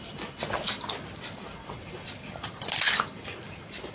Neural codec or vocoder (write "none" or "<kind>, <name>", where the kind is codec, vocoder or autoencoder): none